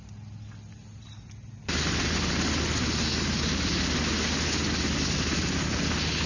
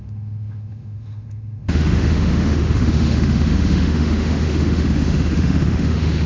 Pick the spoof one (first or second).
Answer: second